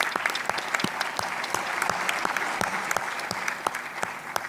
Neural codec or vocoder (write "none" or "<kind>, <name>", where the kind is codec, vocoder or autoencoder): vocoder, BigVGAN v2